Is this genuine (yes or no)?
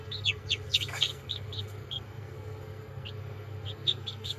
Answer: no